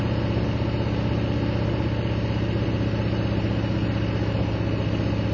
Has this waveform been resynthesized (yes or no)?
no